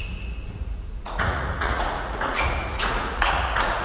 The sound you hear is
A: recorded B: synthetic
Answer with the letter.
B